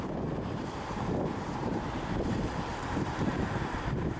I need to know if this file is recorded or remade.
remade